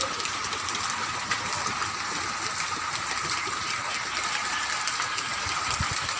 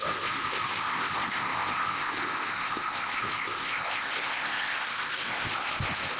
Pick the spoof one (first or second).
second